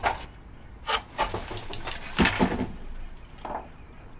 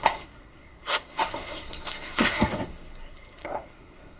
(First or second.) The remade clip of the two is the second